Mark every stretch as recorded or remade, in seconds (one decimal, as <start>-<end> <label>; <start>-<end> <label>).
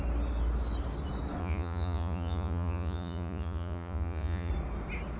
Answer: 0.0-1.4 recorded; 1.4-4.5 remade; 4.5-5.2 recorded